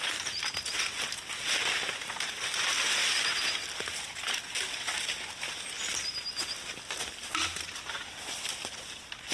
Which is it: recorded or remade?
recorded